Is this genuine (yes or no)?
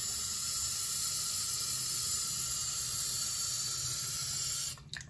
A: yes